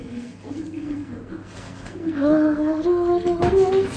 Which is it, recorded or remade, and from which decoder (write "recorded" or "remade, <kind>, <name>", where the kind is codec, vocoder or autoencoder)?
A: remade, codec, SNAC